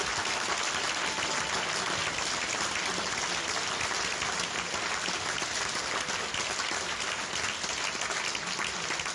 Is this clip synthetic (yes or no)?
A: no